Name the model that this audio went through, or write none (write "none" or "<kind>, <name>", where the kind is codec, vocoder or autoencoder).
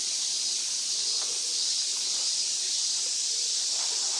vocoder, BigVGAN v2